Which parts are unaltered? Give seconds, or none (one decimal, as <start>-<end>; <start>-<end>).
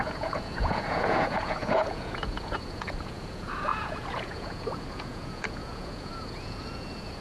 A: none